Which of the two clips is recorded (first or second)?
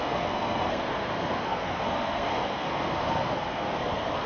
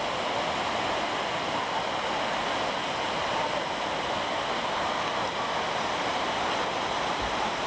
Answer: second